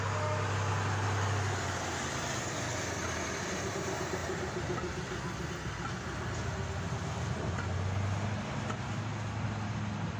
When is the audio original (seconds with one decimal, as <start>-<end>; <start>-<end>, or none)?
0.0-10.2